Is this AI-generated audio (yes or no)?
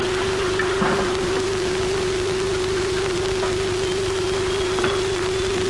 no